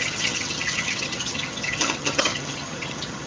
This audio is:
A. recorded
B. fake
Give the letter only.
B